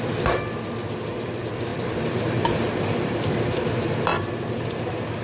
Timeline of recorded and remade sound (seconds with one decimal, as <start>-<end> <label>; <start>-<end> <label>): 0.0-1.7 recorded; 1.7-3.4 remade; 3.4-5.2 recorded